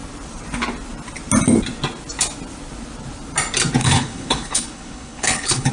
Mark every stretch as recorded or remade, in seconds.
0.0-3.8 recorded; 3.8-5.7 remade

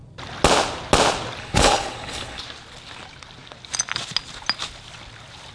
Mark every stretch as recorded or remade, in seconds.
0.0-1.4 recorded; 1.4-2.4 remade; 2.4-5.5 recorded

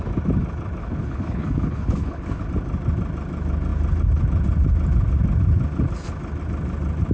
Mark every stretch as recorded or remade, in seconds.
0.0-0.8 recorded; 0.8-2.4 remade; 2.4-7.1 recorded

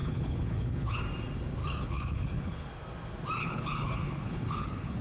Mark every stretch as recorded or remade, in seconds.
0.0-1.0 remade; 1.0-1.6 recorded; 1.6-2.7 remade; 2.7-3.4 recorded; 3.4-5.0 remade

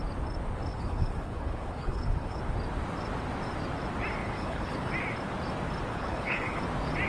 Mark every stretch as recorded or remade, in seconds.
0.0-0.7 recorded; 0.7-2.4 remade; 2.4-4.2 recorded; 4.2-4.9 remade; 4.9-5.9 recorded; 5.9-6.6 remade; 6.6-7.1 recorded

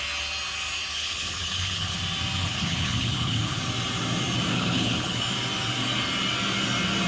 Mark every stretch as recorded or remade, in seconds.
0.0-0.9 recorded; 0.9-2.0 remade; 2.0-2.4 recorded; 2.4-3.6 remade; 3.6-4.5 recorded; 4.5-5.2 remade; 5.2-7.1 recorded

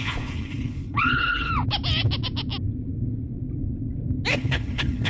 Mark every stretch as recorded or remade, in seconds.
0.0-1.5 remade; 1.5-4.3 recorded; 4.3-5.1 remade

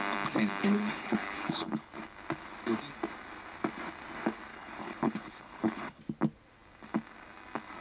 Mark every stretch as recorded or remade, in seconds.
0.0-0.6 recorded; 0.6-1.9 remade; 1.9-4.5 recorded; 4.5-6.0 remade; 6.0-7.8 recorded